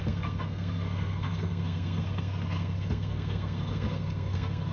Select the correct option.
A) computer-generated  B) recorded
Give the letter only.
A